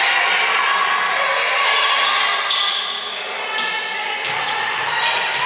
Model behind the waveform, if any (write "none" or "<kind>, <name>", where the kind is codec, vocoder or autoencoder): none